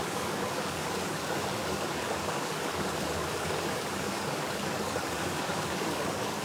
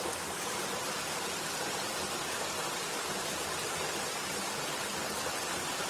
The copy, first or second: first